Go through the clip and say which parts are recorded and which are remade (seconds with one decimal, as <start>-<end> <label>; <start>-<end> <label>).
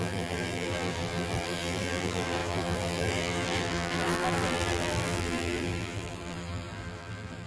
0.0-7.5 remade